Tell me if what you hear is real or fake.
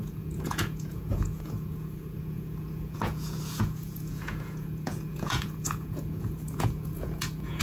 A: fake